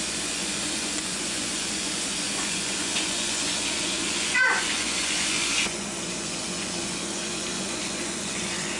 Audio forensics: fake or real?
fake